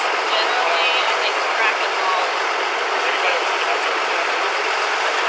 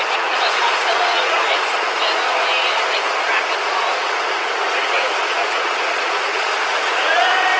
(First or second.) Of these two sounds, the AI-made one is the second